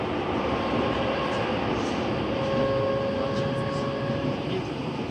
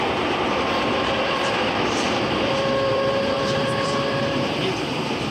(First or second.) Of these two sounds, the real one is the first